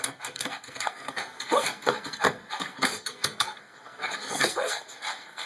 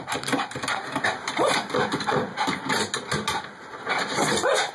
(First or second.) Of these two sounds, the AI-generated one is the first